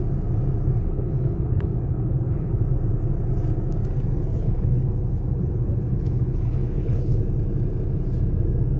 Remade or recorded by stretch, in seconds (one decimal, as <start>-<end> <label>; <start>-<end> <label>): 0.0-0.8 recorded; 0.8-2.5 remade; 2.5-4.3 recorded; 4.3-7.2 remade; 7.2-8.8 recorded